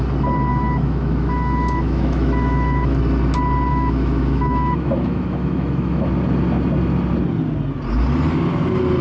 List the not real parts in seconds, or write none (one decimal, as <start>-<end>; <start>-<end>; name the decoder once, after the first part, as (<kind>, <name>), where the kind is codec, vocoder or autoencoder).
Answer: 0.5-3.0 (autoencoder, DAC-VAE); 3.7-6.1